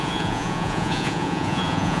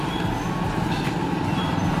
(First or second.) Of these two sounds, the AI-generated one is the first